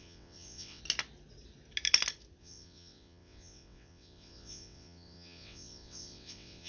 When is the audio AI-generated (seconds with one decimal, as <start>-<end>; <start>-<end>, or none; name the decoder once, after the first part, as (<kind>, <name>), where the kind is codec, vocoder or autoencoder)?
0.0-0.8 (vocoder, WaveNeXt); 2.4-6.7

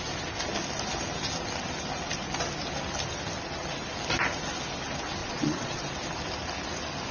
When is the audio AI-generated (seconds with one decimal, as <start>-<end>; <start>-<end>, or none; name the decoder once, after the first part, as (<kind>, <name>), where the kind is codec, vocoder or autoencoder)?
5.2-5.8 (vocoder, Vocos)

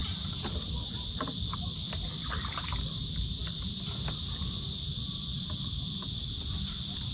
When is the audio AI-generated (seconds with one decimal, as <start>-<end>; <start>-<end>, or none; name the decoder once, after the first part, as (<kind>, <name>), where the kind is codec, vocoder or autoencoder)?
0.0-2.4 (vocoder, BigVGAN v2); 3.4-5.9

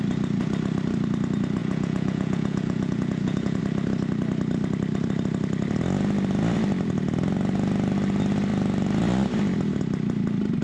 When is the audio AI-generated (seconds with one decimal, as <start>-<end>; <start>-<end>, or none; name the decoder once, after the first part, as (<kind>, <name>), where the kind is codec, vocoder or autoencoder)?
1.6-3.6 (vocoder, Vocos)

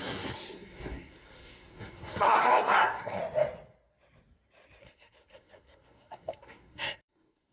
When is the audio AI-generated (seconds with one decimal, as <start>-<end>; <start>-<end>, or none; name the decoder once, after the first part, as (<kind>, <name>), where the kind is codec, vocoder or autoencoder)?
0.0-3.2 (codec, SNAC); 4.8-7.5